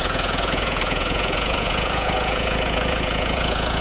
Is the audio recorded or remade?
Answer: remade